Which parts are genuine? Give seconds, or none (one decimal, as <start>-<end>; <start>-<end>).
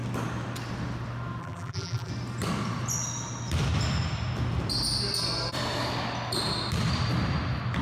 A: 0.0-1.4; 2.1-7.8